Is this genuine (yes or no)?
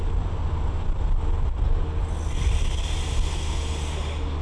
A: yes